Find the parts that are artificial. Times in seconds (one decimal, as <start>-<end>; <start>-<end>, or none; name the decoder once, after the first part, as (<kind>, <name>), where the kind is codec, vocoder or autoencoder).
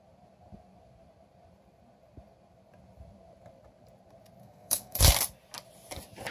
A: 4.4-5.0 (codec, SNAC)